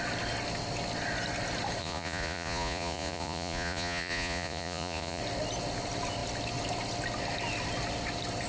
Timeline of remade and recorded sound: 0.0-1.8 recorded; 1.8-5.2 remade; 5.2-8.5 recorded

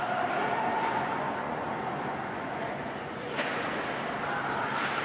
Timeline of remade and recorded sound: 0.0-0.7 recorded; 0.7-3.7 remade; 3.7-5.0 recorded

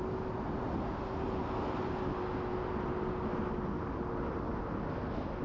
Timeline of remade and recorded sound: 0.0-5.4 recorded